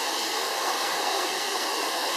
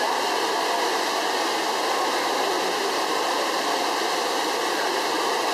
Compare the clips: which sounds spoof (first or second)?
first